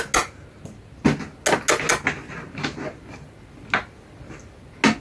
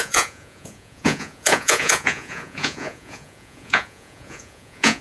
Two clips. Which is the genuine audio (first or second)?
first